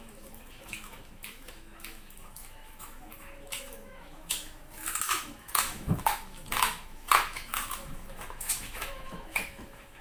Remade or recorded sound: remade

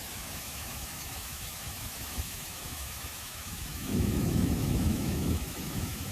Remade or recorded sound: remade